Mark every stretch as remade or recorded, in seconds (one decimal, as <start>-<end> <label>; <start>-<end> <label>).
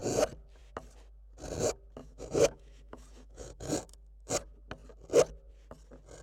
0.0-2.0 recorded; 2.0-3.7 remade; 3.7-6.2 recorded